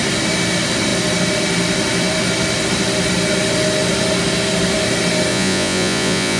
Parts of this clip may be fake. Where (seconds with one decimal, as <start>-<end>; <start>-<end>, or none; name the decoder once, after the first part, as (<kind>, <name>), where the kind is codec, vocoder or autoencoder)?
5.3-6.4 (vocoder, Vocos)